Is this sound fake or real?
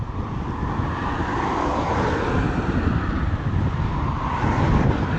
real